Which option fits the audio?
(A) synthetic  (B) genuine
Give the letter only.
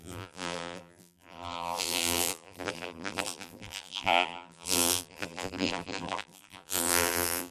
A